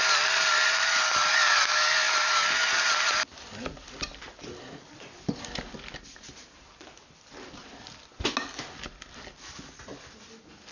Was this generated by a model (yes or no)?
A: no